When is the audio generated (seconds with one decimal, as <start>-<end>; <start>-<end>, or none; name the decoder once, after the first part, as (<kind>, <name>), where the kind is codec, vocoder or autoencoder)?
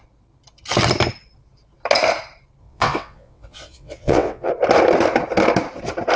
2.6-4.5 (vocoder, WaveNeXt)